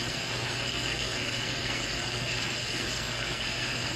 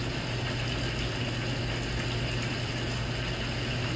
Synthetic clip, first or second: first